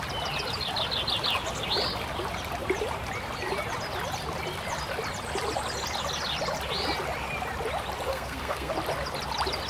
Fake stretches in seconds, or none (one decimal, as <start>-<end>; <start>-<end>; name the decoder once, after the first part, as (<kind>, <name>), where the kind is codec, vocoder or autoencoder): 8.1-8.7 (codec, SNAC)